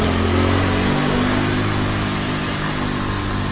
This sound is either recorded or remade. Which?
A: recorded